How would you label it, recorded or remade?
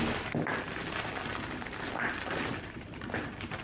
recorded